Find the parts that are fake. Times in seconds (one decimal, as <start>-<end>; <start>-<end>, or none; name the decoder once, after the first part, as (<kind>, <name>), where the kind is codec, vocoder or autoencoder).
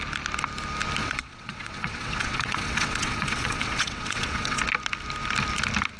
1.0-4.6 (vocoder, WaveNeXt)